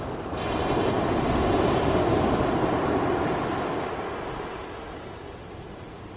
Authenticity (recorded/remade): recorded